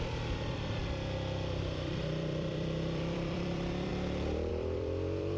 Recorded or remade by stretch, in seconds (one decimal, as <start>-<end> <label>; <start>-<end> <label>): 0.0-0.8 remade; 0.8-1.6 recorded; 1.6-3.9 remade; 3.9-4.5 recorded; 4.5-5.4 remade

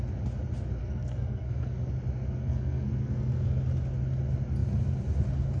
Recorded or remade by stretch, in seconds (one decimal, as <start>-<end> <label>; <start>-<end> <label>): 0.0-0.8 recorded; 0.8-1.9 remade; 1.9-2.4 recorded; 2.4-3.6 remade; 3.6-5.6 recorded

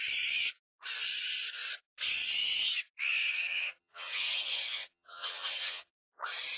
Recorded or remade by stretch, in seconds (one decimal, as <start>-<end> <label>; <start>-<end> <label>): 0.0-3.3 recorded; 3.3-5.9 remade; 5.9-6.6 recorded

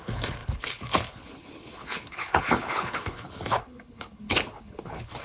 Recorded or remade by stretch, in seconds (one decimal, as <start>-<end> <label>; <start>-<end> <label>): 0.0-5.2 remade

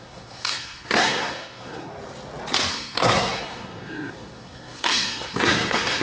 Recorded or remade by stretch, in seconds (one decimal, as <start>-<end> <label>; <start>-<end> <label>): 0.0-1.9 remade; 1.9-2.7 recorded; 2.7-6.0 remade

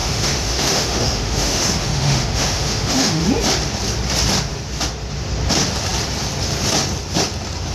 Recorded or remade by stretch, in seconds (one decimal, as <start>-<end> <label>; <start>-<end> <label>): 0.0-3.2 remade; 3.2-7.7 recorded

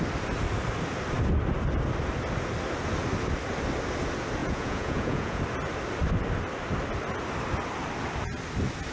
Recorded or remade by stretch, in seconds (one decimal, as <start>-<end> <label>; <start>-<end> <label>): 0.0-4.4 recorded; 4.4-5.4 remade; 5.4-8.9 recorded

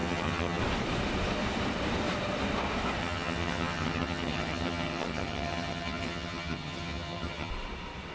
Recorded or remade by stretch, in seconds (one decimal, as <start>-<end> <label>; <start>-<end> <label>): 0.0-0.6 remade; 0.6-3.0 recorded; 3.0-7.5 remade; 7.5-8.1 recorded